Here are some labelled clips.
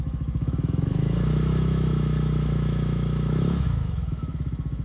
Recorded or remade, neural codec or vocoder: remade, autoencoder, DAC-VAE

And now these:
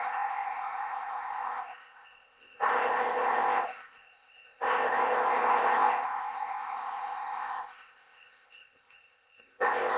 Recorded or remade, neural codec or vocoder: remade, codec, ZipCodec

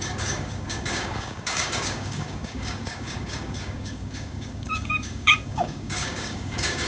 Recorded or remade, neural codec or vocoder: remade, codec, DAC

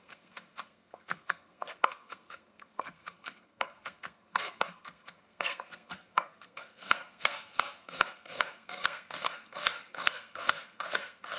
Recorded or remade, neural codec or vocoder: remade, codec, SNAC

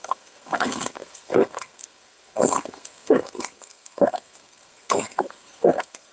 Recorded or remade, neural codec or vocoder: remade, codec, SNAC